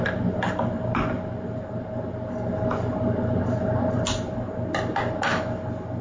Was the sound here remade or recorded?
recorded